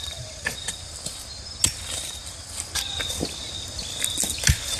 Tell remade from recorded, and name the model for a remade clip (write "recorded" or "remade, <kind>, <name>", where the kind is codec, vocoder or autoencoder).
recorded